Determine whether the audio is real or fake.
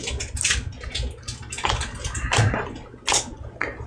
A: real